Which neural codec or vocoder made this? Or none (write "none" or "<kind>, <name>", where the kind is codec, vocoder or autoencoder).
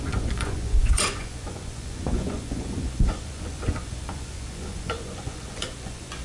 vocoder, Vocos